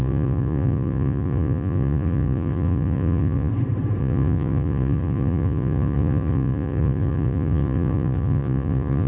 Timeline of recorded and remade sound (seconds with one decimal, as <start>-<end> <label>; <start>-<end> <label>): 0.0-3.5 remade; 3.5-4.0 recorded; 4.0-9.1 remade